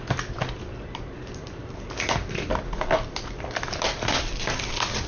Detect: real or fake real